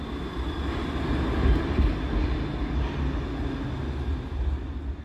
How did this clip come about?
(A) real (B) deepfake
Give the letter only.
A